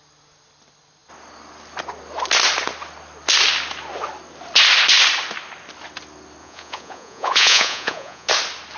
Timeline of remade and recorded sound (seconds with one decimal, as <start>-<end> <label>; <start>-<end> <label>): 0.0-6.4 recorded; 6.4-8.3 remade; 8.3-8.8 recorded